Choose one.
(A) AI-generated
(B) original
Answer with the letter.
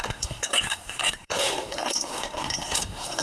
A